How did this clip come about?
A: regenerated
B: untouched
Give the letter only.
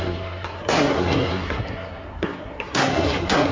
A